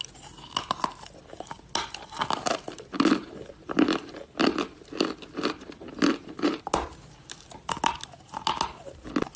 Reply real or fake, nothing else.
real